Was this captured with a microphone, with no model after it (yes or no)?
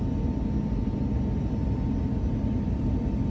yes